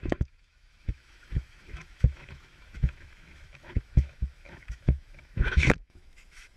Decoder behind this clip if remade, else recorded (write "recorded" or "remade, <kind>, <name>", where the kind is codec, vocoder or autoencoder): remade, autoencoder, DAC-VAE